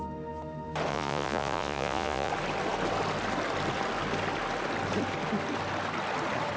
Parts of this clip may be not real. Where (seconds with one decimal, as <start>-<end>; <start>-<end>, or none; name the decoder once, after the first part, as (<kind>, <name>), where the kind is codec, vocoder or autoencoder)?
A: 0.9-2.3 (vocoder, Vocos)